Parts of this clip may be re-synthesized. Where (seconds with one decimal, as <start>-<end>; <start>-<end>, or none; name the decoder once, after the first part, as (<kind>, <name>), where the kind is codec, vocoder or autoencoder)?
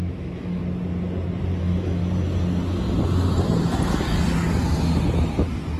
0.0-0.6 (autoencoder, DAC-VAE); 1.6-2.0